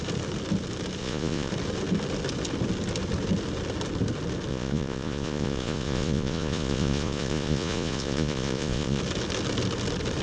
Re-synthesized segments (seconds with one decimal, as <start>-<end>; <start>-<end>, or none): 1.0-1.5; 4.5-9.0